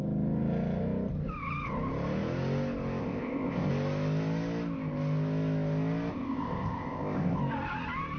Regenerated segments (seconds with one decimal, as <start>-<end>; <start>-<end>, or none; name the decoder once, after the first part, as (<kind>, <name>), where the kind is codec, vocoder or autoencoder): 3.0-3.7 (codec, ZipCodec); 6.1-7.4